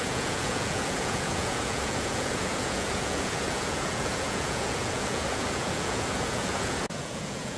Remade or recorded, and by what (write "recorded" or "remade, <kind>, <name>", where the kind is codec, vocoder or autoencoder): remade, vocoder, Vocos